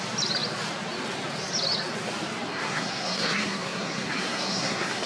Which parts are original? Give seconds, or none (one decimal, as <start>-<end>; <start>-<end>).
0.0-2.5